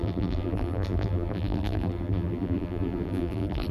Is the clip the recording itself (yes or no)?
no